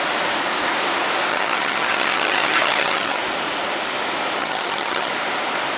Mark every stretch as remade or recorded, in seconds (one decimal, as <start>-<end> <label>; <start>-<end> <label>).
0.0-1.3 recorded; 1.3-3.2 remade; 3.2-4.4 recorded; 4.4-5.1 remade; 5.1-5.8 recorded